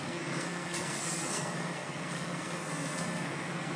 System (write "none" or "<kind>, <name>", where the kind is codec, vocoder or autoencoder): codec, SNAC